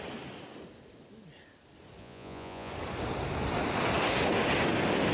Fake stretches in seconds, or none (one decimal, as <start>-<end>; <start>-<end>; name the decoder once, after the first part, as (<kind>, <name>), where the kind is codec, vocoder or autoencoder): 2.0-2.7 (vocoder, Vocos)